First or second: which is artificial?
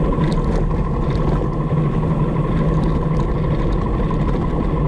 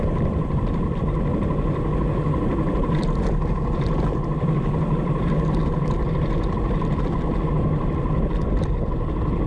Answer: second